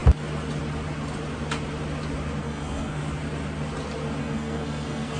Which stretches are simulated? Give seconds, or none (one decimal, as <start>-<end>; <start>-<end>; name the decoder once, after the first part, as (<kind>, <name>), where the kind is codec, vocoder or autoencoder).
2.4-3.0 (codec, SNAC); 4.2-5.2